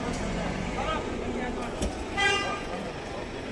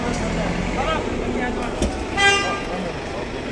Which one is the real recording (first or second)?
second